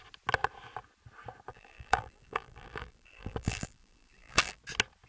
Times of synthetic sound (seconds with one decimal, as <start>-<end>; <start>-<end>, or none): 1.5-4.6